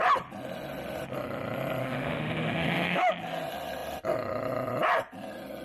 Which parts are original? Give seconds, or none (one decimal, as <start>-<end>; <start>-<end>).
0.0-1.8; 3.1-5.6